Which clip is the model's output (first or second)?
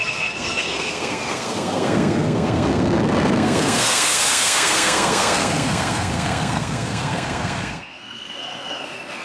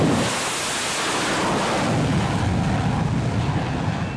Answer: first